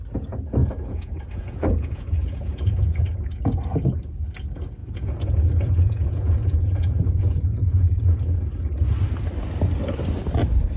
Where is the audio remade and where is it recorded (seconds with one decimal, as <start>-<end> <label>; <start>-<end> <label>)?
0.0-0.6 recorded; 0.6-3.4 remade; 3.4-4.8 recorded; 4.8-7.8 remade; 7.8-10.8 recorded